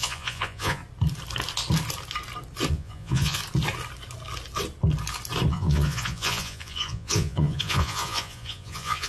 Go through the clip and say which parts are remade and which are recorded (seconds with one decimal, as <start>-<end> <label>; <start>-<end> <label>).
0.0-0.8 remade; 0.8-2.7 recorded; 2.7-3.4 remade; 3.4-5.5 recorded; 5.5-9.1 remade